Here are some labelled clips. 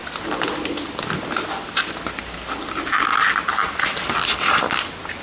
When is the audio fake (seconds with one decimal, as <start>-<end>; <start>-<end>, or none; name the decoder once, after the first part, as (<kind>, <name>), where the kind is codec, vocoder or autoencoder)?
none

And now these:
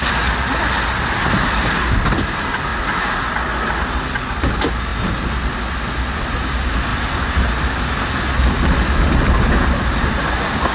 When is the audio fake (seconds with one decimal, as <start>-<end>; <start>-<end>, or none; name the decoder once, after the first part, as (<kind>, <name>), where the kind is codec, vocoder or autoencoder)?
none

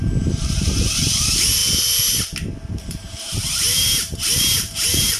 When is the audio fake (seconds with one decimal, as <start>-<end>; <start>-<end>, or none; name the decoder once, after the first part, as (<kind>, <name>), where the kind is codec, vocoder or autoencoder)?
0.0-1.6 (vocoder, BigVGAN v2); 2.7-5.2